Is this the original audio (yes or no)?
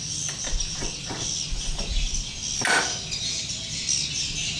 yes